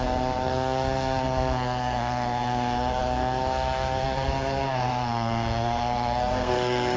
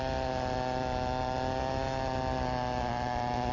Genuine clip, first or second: second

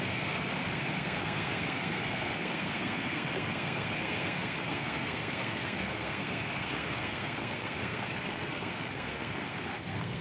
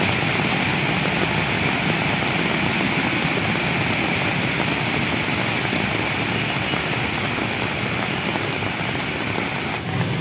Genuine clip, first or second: second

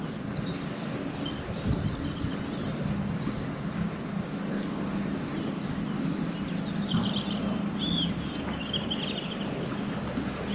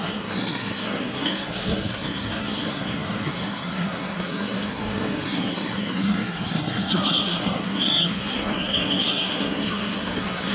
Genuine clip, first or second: first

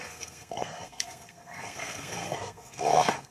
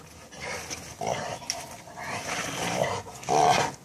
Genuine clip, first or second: second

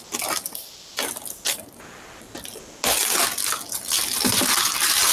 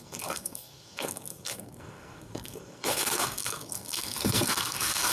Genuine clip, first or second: first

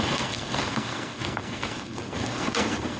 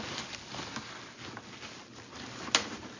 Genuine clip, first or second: second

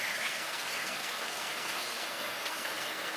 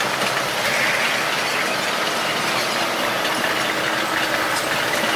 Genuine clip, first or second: second